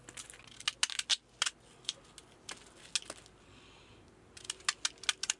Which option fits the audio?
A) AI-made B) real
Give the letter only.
B